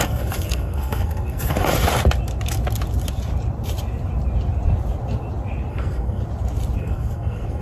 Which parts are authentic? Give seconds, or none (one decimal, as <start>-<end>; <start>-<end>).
1.7-5.7; 6.2-6.8